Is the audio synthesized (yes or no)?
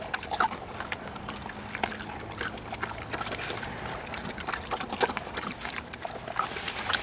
no